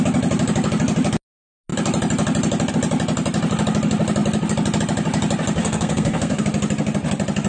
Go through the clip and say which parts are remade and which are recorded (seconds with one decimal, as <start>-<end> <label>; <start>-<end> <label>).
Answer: 0.0-5.6 recorded; 5.6-6.4 remade; 6.4-7.5 recorded